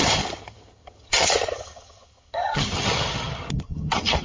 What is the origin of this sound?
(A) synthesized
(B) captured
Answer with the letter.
A